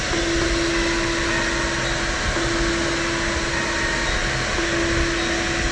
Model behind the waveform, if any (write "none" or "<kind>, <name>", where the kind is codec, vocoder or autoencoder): none